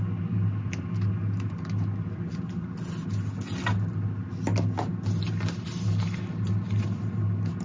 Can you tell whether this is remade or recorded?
recorded